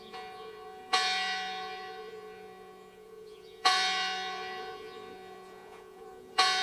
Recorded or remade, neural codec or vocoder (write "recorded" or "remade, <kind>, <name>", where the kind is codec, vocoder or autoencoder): remade, vocoder, Vocos